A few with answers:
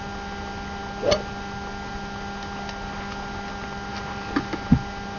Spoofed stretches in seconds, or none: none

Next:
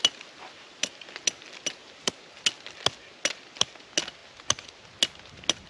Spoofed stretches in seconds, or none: 1.8-2.3